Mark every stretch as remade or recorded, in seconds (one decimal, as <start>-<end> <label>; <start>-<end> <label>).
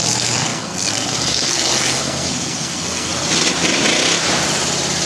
0.0-3.1 remade; 3.1-5.1 recorded